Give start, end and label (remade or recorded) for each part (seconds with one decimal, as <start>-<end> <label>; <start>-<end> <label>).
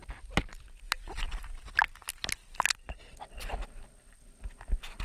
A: 0.0-5.0 recorded